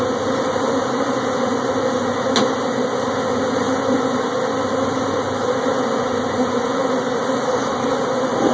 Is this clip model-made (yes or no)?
no